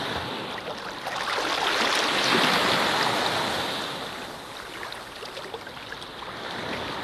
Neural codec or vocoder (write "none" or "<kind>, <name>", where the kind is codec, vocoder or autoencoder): none